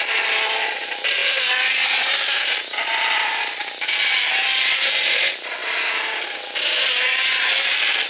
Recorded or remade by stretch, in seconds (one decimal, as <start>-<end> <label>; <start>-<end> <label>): 0.0-5.6 remade; 5.6-6.8 recorded; 6.8-8.1 remade